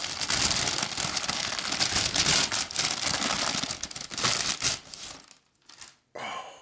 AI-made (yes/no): no